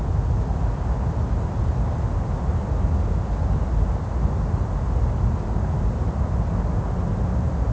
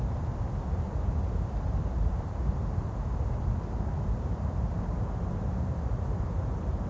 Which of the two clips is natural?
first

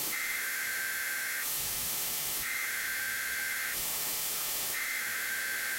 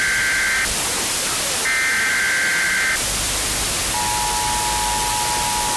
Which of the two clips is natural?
second